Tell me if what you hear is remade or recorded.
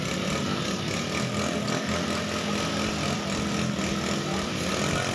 recorded